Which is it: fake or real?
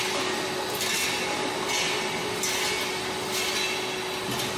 real